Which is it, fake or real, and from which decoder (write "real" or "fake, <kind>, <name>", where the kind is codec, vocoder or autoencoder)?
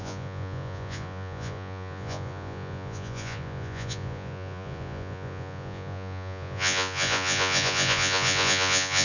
fake, vocoder, Vocos